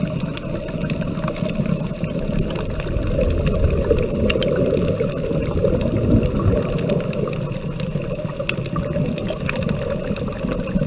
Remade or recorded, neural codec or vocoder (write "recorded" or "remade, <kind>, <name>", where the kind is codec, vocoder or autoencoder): recorded